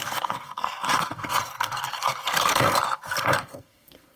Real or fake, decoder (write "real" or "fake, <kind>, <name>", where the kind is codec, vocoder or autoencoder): fake, codec, SNAC